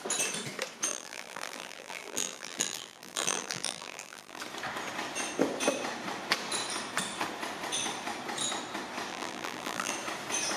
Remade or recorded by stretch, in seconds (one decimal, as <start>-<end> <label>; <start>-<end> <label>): 0.0-0.9 recorded; 0.9-4.4 remade; 4.4-9.1 recorded; 9.1-9.9 remade; 9.9-10.6 recorded